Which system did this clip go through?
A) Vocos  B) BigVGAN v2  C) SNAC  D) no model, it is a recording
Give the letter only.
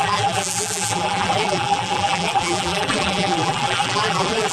B